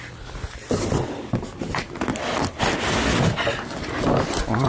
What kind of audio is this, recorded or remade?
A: recorded